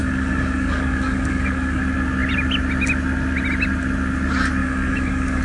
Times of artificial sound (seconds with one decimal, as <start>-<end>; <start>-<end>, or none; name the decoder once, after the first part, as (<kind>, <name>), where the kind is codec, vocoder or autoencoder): 0.0-1.8 (codec, DAC); 4.6-5.4